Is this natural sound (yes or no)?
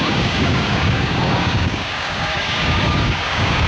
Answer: no